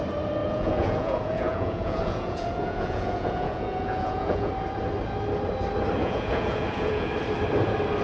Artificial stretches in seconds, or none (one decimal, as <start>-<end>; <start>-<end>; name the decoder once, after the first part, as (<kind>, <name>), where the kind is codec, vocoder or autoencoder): 0.4-4.5 (vocoder, Vocos); 6.0-7.1